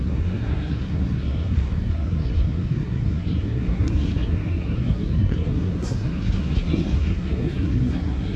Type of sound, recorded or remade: remade